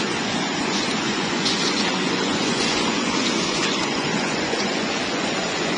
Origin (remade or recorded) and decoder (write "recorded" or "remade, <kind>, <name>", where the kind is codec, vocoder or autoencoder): remade, vocoder, Vocos